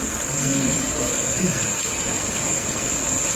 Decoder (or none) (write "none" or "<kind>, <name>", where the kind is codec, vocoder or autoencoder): codec, SNAC